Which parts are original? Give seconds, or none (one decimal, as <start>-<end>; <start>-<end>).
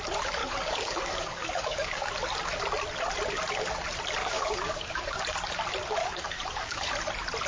0.0-0.4; 2.1-4.2; 5.2-6.0; 6.9-7.5